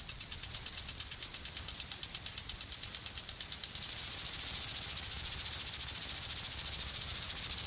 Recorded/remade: recorded